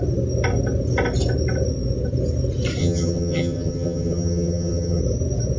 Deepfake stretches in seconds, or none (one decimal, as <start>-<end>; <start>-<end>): 2.8-5.0